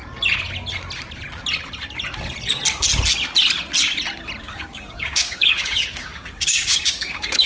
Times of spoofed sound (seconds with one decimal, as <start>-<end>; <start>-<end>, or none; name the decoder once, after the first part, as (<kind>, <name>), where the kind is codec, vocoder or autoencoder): 4.4-7.5 (codec, DAC)